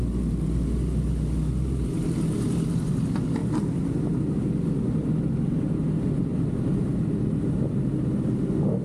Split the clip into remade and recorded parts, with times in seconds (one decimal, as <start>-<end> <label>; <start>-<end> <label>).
0.0-8.8 recorded